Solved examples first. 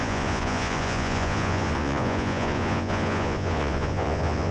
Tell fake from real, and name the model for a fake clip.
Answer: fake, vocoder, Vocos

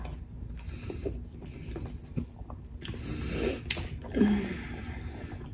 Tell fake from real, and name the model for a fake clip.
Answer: real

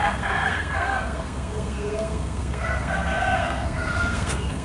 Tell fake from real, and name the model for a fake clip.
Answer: fake, codec, SNAC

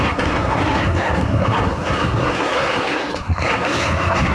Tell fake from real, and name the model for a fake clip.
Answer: fake, codec, SNAC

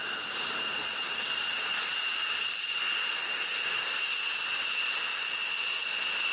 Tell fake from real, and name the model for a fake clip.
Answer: real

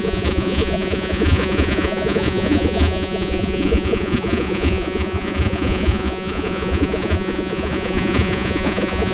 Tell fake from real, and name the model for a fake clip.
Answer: fake, vocoder, Vocos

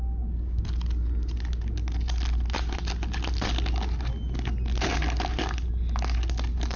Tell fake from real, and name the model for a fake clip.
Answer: real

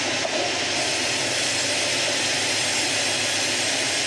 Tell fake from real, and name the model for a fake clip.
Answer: real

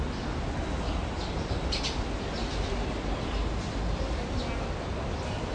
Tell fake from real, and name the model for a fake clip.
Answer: real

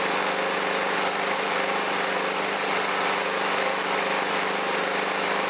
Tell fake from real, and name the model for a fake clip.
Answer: real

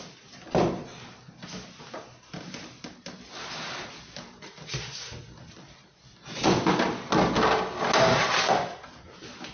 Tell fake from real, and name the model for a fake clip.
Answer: real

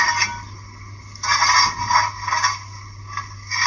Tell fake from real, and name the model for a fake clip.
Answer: real